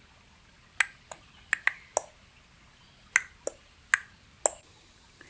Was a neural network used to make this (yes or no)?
no